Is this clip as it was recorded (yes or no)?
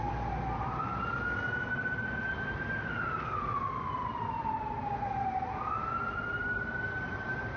yes